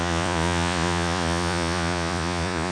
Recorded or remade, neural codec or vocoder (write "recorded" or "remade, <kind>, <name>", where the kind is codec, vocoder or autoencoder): remade, vocoder, Vocos